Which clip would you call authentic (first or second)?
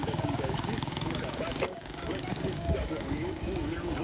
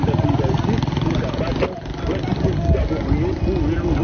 second